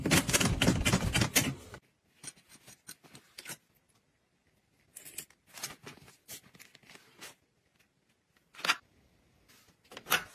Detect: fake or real real